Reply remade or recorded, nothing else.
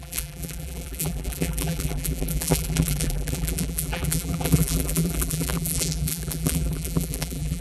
remade